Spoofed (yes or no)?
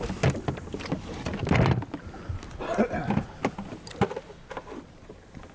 no